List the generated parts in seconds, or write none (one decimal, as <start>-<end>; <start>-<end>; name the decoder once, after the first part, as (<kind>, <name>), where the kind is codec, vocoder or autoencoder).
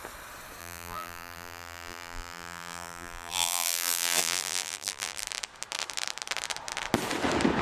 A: 0.6-5.2 (vocoder, BigVGAN v2)